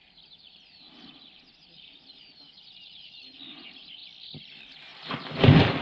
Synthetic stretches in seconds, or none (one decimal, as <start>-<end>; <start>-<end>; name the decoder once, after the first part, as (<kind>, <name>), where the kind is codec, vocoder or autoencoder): none